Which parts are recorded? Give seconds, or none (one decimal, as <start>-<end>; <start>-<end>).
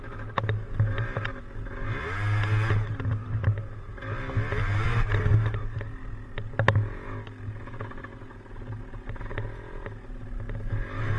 0.0-3.4; 4.0-11.2